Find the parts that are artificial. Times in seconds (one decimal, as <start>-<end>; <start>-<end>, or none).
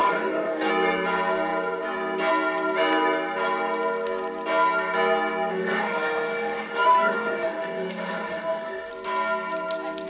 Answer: 0.0-0.7; 5.5-8.9